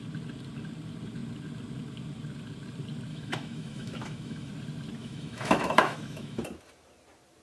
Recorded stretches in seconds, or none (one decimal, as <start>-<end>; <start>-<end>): 0.0-3.1; 4.5-5.0; 6.4-7.4